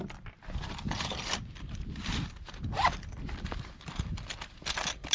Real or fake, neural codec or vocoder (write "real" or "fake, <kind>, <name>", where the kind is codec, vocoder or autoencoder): real